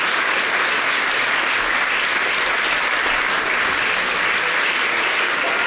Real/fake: real